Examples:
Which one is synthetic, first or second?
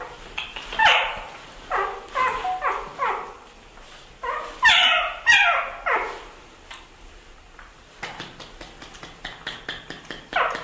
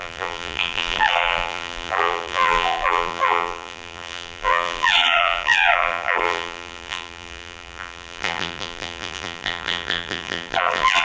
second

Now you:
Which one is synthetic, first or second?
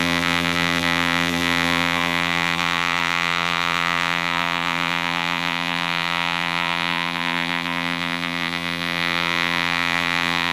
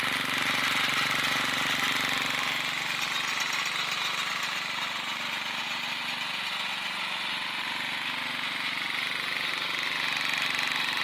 first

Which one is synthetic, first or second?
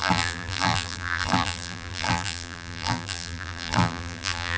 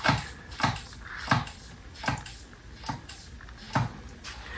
first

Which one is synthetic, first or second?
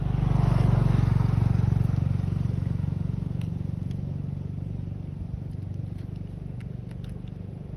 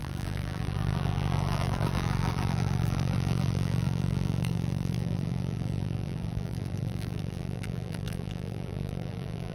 second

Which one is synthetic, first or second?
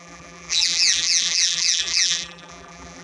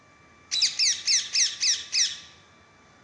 first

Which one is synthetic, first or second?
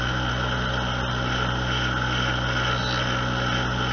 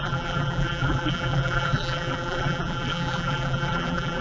second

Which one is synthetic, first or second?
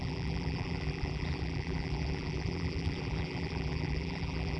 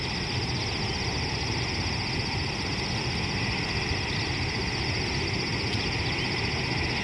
first